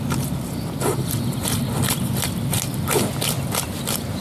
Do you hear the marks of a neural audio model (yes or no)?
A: no